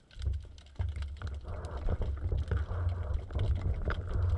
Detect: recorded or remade recorded